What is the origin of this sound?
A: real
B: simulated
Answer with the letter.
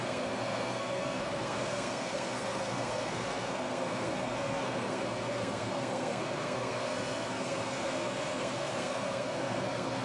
B